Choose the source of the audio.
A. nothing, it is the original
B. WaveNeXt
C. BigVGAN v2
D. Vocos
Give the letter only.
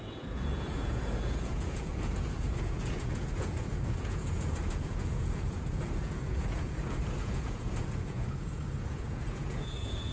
D